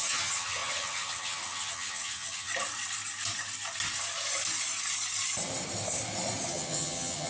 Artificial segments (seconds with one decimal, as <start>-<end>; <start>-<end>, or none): 0.0-2.5; 6.5-7.3

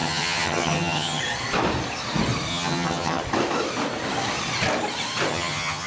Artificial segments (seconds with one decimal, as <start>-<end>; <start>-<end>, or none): 0.0-1.2; 2.5-3.2; 5.3-5.9

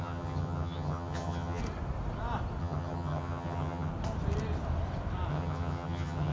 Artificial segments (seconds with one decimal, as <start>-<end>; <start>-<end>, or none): 0.0-1.6; 2.6-3.9; 5.3-6.3

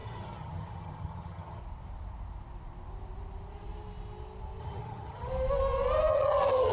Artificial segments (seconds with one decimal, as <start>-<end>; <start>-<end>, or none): 0.0-1.6; 4.6-5.3; 6.1-6.7

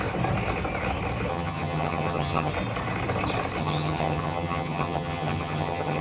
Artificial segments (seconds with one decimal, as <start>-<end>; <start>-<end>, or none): 1.3-2.5; 3.6-6.0